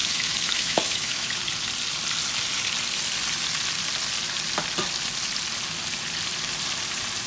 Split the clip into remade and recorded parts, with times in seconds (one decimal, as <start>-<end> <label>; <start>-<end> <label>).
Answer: 0.0-1.4 remade; 1.4-7.3 recorded